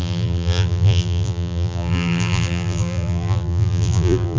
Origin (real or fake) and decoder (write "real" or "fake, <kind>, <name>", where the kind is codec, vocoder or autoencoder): fake, vocoder, BigVGAN v2